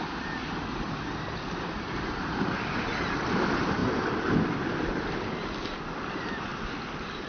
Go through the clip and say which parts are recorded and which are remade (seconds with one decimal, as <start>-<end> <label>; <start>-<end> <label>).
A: 0.0-6.5 remade; 6.5-7.3 recorded